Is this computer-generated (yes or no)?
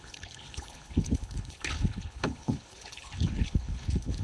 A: yes